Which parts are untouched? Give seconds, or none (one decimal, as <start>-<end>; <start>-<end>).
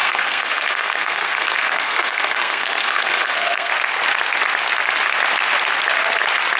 3.7-6.6